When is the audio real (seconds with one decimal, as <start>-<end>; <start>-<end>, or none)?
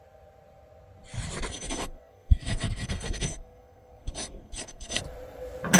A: 0.0-1.5; 5.0-5.8